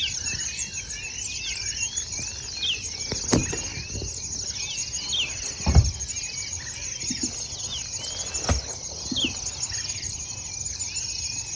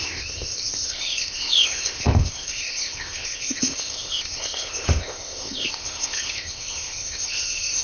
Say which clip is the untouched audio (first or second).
first